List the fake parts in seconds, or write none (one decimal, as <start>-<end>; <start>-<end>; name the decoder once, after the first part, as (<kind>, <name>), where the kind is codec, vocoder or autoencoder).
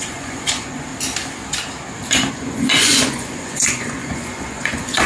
0.0-0.9 (vocoder, Vocos); 2.3-5.1